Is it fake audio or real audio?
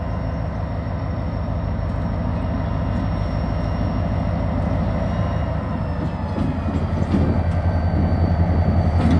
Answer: real